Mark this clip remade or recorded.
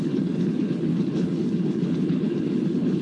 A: remade